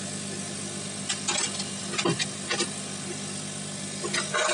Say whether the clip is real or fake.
real